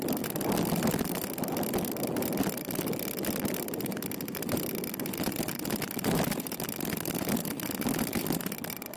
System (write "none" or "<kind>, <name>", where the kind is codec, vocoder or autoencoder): none